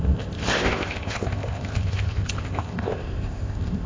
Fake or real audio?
fake